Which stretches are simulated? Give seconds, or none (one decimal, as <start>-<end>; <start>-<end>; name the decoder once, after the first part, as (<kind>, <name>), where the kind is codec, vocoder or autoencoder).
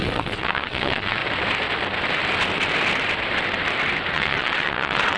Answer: 0.0-1.2 (vocoder, WaveNeXt); 4.1-5.2